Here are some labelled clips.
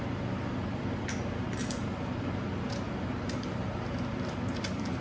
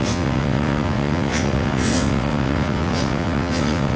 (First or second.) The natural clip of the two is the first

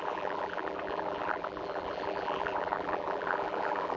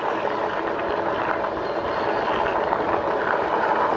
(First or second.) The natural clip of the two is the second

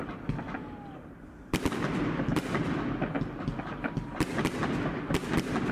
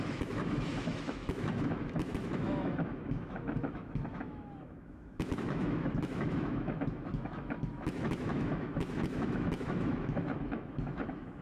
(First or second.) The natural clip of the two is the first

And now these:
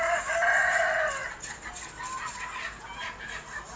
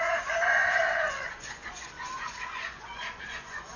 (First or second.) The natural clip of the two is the first